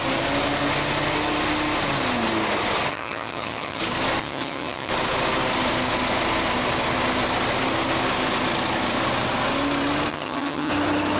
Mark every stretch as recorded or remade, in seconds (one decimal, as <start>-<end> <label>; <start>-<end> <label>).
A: 0.0-2.9 recorded; 2.9-3.8 remade; 3.8-4.2 recorded; 4.2-4.9 remade; 4.9-10.1 recorded; 10.1-10.7 remade; 10.7-11.2 recorded